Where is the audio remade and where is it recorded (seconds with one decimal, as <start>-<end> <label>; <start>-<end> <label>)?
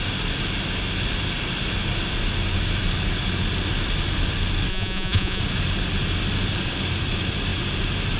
0.0-4.7 recorded; 4.7-5.4 remade; 5.4-8.2 recorded